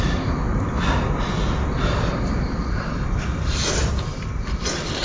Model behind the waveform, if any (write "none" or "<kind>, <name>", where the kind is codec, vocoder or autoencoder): none